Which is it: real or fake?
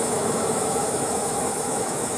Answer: fake